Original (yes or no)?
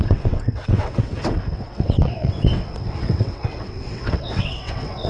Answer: no